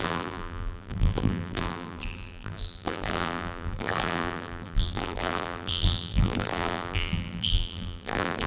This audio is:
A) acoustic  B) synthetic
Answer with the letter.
B